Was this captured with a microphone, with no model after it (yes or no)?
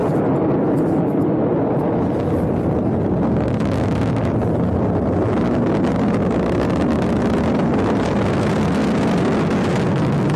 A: yes